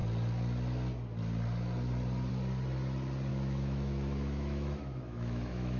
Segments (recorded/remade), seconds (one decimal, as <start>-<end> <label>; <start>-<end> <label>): 0.0-3.3 recorded; 3.3-5.8 remade